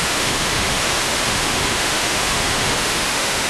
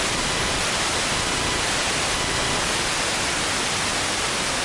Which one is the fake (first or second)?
first